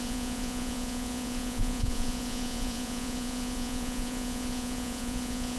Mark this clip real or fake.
fake